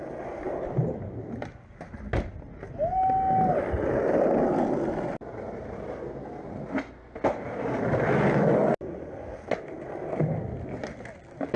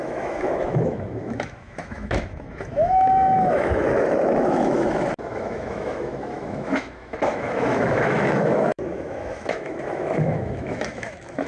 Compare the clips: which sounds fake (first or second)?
second